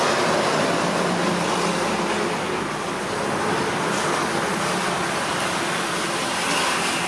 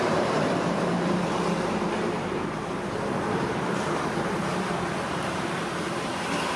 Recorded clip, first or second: first